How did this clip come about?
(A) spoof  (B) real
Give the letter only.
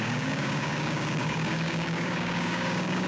A